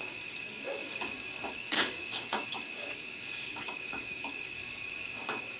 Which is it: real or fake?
fake